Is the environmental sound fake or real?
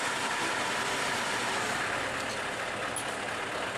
real